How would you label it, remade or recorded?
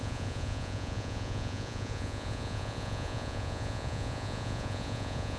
remade